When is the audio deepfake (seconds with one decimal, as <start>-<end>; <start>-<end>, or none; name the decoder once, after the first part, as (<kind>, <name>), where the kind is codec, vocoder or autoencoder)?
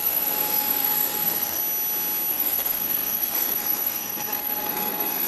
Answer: 0.0-1.6 (codec, SNAC); 2.3-5.3